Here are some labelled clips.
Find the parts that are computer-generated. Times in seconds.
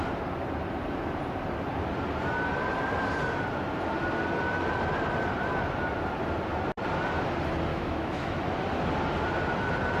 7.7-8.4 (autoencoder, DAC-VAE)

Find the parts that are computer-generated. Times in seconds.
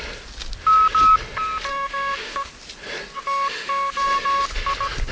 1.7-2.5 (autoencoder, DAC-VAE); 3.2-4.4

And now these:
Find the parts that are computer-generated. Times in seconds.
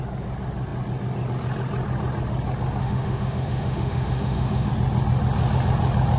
2.8-4.7 (autoencoder, DAC-VAE)